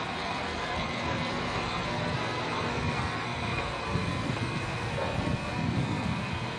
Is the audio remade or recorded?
remade